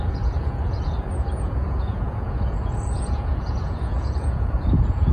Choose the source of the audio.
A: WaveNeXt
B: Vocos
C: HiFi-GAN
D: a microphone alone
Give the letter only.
B